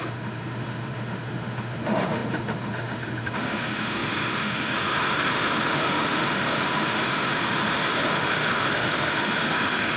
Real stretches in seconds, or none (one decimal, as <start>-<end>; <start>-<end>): none